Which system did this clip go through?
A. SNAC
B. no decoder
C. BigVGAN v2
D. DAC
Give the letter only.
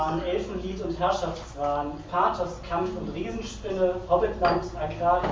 B